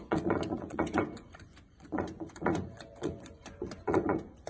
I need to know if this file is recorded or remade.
remade